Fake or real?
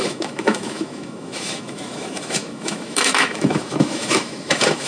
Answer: fake